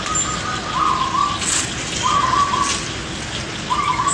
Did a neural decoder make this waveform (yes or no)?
no